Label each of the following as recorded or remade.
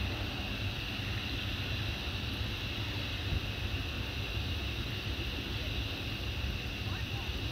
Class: recorded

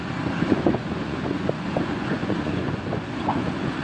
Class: remade